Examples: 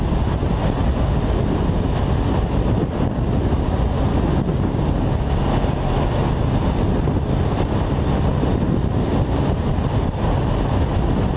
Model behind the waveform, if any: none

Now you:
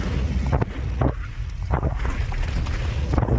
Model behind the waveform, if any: vocoder, Vocos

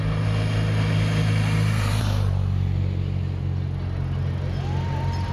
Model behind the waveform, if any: none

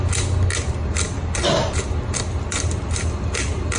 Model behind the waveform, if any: none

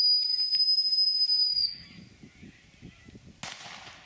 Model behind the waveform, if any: none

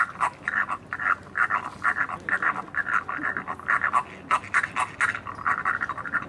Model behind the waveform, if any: none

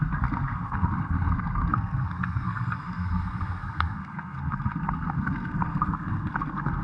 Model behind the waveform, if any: codec, SNAC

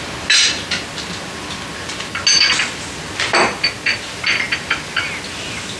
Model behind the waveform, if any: none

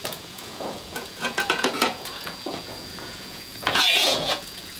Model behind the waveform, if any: vocoder, Vocos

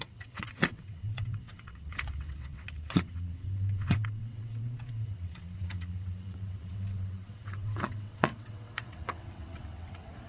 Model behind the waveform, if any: vocoder, WaveNeXt